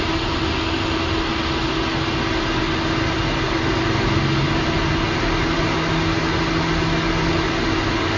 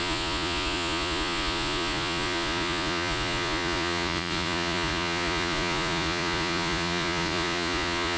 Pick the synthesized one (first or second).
second